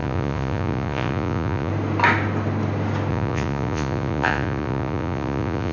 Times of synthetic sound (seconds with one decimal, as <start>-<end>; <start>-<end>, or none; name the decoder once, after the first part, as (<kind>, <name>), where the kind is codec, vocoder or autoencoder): 0.0-1.7 (vocoder, Vocos); 3.1-5.7